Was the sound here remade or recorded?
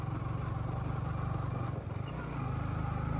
recorded